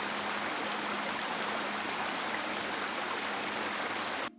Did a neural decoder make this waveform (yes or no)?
no